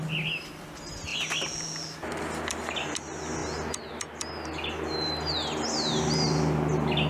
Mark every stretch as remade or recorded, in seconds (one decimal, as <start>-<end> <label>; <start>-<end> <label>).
0.0-7.1 recorded